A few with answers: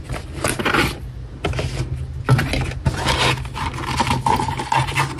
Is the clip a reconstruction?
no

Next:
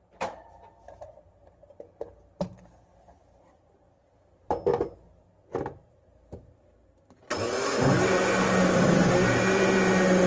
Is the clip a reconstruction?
no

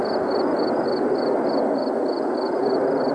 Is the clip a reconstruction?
no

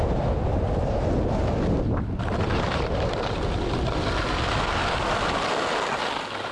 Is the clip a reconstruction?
no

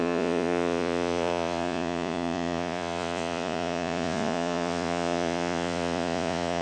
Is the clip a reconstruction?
yes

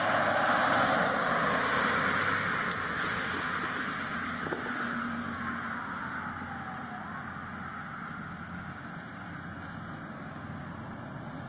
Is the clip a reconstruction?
no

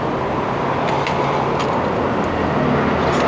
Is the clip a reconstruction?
no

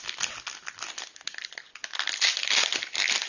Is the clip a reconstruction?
no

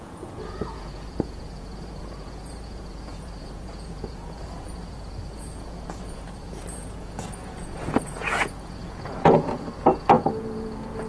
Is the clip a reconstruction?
yes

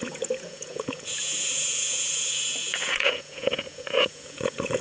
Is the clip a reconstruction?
yes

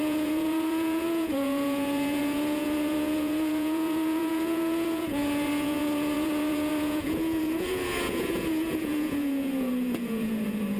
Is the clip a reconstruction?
yes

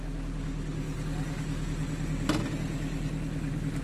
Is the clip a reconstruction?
no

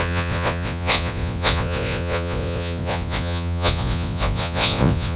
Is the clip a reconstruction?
yes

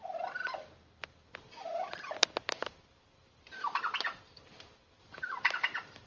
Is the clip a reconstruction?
no